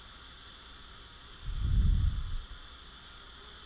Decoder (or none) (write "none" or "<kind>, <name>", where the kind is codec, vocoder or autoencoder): none